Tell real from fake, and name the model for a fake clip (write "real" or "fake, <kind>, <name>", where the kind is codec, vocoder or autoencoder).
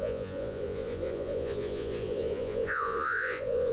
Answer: fake, vocoder, Vocos